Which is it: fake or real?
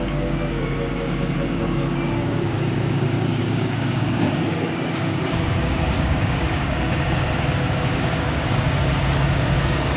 fake